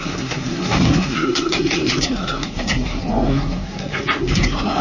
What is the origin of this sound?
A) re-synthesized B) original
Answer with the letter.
A